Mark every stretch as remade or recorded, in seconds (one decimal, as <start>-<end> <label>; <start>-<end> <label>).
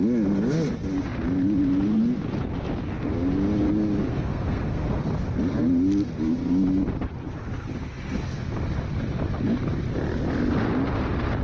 0.0-4.1 recorded; 4.1-5.0 remade; 5.0-11.4 recorded